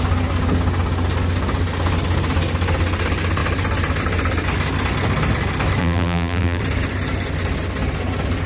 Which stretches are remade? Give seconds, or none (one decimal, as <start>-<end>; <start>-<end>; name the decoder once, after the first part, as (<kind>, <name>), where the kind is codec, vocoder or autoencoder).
5.8-6.6 (vocoder, BigVGAN v2)